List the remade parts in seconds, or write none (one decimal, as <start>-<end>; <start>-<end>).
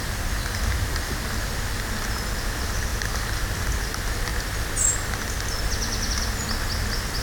none